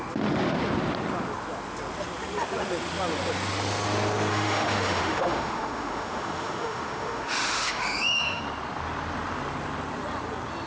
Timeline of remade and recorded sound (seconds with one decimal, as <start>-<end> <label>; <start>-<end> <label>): 0.0-4.3 recorded; 4.3-8.4 remade; 8.4-10.7 recorded